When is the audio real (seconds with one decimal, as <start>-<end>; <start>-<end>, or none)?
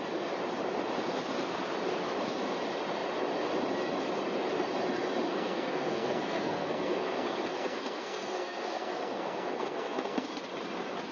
0.0-5.3; 10.3-11.1